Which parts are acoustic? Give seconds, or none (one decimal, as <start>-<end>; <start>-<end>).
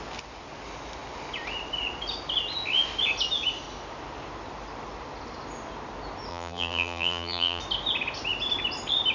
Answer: 0.0-6.3; 7.6-9.1